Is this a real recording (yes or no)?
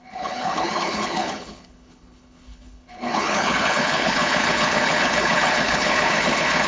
no